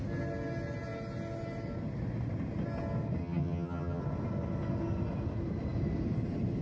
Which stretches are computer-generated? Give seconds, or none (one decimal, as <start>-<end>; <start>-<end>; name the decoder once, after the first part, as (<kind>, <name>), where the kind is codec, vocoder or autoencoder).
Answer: 3.2-4.0 (vocoder, HiFi-GAN)